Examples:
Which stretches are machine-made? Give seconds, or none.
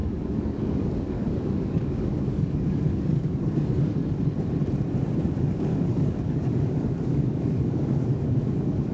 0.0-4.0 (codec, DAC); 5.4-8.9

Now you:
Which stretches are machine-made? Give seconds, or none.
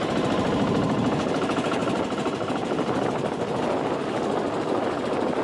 none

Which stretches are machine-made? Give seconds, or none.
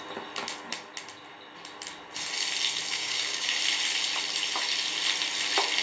2.9-3.6 (codec, DAC)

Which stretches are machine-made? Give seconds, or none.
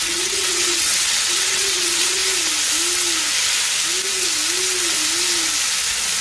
0.0-2.2 (vocoder, WaveNeXt)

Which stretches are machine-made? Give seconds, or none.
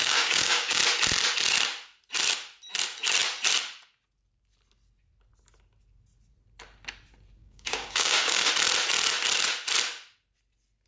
0.0-0.8 (codec, DAC); 7.4-8.5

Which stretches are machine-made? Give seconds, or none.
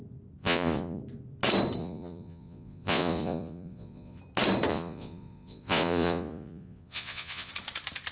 0.4-1.0 (vocoder, Vocos); 1.8-4.2; 4.7-7.5